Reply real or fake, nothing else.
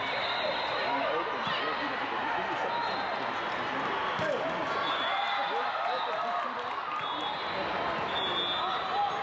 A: real